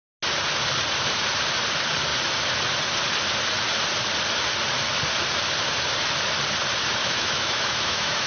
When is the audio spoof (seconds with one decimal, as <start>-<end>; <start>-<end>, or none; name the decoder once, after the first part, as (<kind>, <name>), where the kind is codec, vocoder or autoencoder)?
7.0-8.3 (autoencoder, DAC-VAE)